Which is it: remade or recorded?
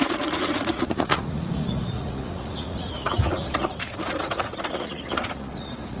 remade